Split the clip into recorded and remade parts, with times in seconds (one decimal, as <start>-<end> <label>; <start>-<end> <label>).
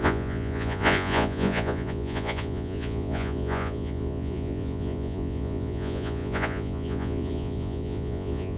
0.0-8.6 remade